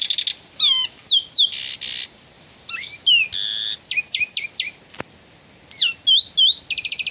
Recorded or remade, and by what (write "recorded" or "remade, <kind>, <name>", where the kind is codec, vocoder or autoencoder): recorded